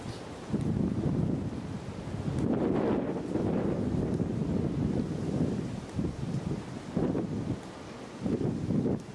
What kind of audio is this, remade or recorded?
recorded